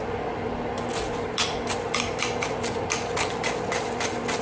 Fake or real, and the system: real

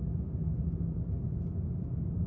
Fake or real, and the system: real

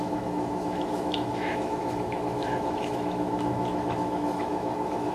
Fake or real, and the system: fake, autoencoder, DAC-VAE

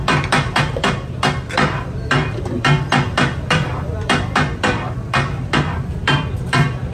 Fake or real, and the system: fake, vocoder, BigVGAN v2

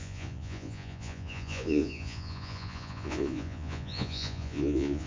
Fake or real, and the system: fake, vocoder, Vocos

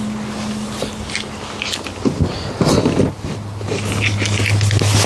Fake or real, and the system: real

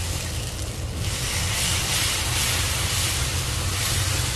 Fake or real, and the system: real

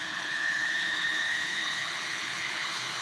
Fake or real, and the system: fake, codec, HILCodec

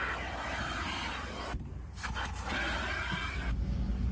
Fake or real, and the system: real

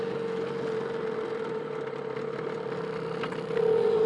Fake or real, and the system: real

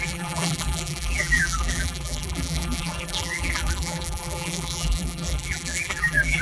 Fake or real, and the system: fake, vocoder, BigVGAN v2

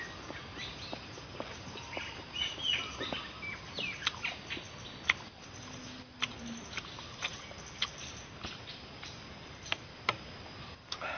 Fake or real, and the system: real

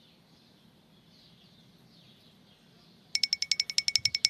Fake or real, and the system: real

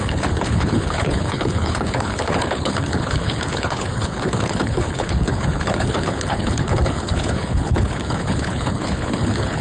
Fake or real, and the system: fake, codec, HILCodec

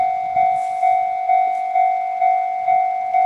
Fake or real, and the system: real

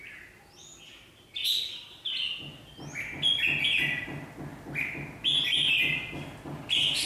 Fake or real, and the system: real